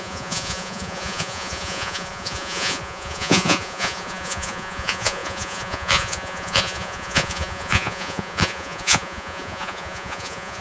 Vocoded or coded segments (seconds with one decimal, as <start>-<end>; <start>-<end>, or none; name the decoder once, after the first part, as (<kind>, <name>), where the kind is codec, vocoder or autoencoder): 0.0-10.6 (vocoder, Vocos)